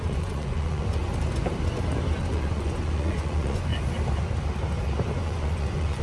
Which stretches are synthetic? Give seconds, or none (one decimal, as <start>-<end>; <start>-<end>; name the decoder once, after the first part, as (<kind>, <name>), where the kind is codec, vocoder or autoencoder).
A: 0.0-1.0 (vocoder, Vocos); 2.2-3.7; 5.2-6.0